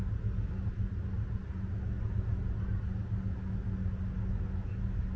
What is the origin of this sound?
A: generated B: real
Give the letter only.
B